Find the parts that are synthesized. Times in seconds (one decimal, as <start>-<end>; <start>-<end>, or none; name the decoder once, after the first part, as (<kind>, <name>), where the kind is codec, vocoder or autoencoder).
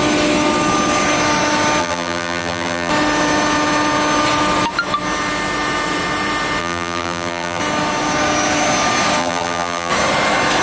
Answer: 1.8-2.9 (vocoder, BigVGAN v2); 6.6-7.6; 9.2-9.9